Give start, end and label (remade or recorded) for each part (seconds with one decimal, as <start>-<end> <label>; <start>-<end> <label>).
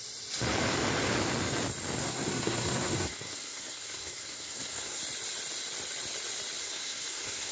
0.0-2.0 recorded; 2.0-5.0 remade; 5.0-6.6 recorded; 6.6-7.5 remade